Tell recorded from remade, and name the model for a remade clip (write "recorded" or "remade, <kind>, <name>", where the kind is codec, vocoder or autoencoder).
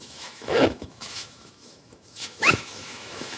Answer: remade, autoencoder, DAC-VAE